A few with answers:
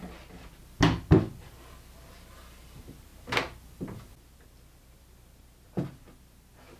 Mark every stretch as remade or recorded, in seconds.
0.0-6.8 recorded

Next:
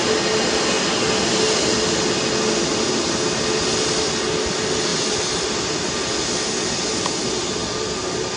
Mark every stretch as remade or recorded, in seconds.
0.0-8.4 recorded

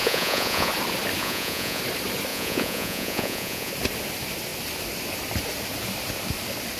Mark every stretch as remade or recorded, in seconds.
0.0-0.7 remade; 0.7-1.2 recorded; 1.2-1.8 remade; 1.8-2.3 recorded; 2.3-3.7 remade; 3.7-6.8 recorded

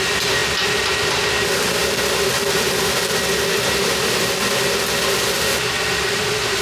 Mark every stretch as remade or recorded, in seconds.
0.0-6.6 recorded

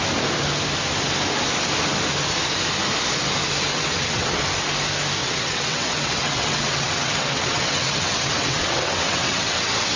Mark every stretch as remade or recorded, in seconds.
0.0-3.7 recorded; 3.7-4.4 remade; 4.4-5.2 recorded; 5.2-10.0 remade

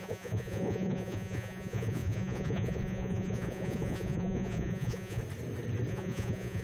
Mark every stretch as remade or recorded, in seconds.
0.0-5.2 remade; 5.2-5.9 recorded; 5.9-6.6 remade

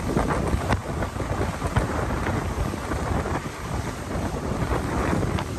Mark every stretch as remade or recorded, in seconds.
0.0-5.6 recorded

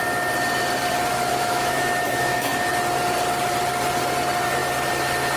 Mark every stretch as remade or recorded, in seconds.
0.0-1.3 recorded; 1.3-2.7 remade; 2.7-5.4 recorded